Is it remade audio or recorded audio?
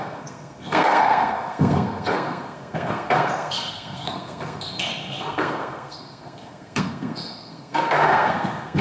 remade